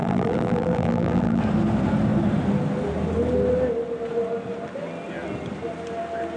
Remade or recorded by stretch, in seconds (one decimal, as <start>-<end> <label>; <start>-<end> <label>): 0.0-1.4 remade; 1.4-6.4 recorded